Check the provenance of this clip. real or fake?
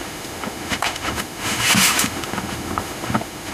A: fake